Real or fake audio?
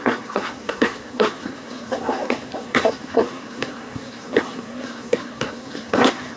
fake